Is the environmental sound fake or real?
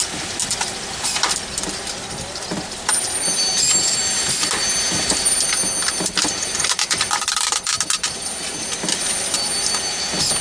real